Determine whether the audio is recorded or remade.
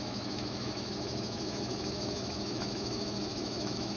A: remade